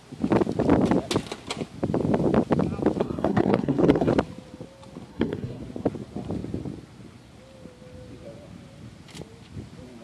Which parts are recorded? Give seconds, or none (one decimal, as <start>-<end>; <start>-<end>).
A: 0.0-3.0; 4.1-5.1; 5.6-10.0